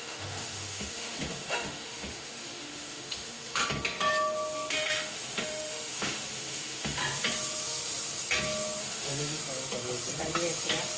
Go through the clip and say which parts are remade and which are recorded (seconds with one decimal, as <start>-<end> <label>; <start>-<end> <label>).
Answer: 0.0-3.6 remade; 3.6-4.7 recorded; 4.7-7.0 remade; 7.0-8.8 recorded; 8.8-9.4 remade; 9.4-11.0 recorded